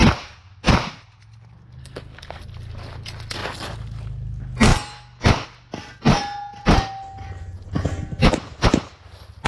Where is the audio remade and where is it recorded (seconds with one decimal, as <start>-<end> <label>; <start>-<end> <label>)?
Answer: 0.0-1.8 recorded; 1.8-2.4 remade; 2.4-9.5 recorded